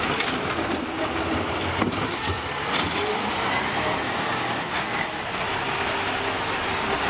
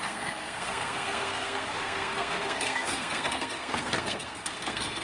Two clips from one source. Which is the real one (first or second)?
first